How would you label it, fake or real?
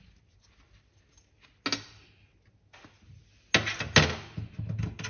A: real